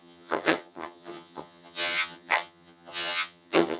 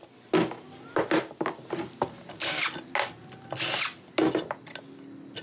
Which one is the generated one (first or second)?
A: first